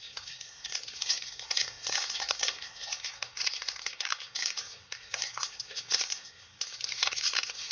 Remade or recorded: remade